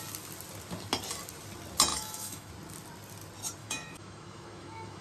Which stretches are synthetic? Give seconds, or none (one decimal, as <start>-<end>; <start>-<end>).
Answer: 1.9-2.5; 3.6-5.0